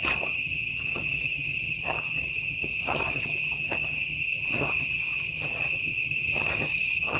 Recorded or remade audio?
remade